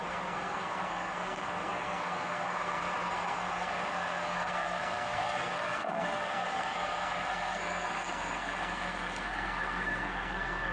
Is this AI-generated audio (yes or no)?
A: yes